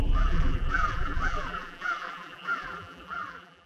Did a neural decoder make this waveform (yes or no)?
yes